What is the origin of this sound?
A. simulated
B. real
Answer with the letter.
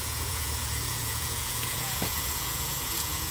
A